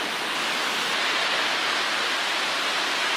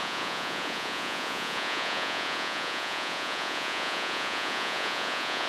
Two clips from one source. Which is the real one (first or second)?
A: first